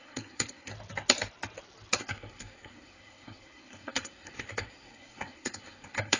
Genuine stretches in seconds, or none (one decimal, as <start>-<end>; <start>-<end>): 0.7-2.0